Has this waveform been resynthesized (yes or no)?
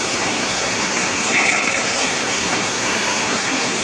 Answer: yes